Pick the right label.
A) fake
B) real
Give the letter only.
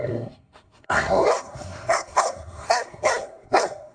A